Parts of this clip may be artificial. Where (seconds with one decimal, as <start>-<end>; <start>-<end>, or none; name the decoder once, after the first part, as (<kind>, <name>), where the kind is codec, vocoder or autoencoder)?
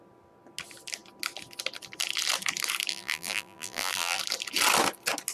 2.9-4.2 (vocoder, BigVGAN v2)